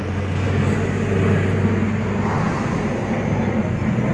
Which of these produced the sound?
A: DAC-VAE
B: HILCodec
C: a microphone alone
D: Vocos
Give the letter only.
C